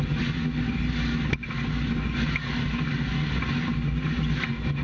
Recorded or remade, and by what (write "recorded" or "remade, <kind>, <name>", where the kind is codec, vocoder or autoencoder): recorded